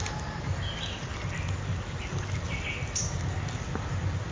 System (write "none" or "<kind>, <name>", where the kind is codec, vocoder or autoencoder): none